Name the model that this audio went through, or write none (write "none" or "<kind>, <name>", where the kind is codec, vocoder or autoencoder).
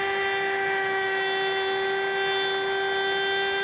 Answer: none